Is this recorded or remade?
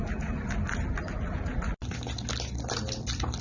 recorded